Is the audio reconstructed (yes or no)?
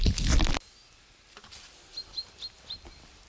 no